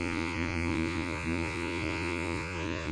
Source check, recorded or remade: remade